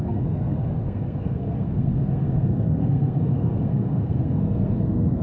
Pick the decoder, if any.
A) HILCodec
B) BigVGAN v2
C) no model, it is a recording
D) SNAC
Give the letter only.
D